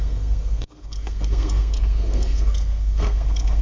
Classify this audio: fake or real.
fake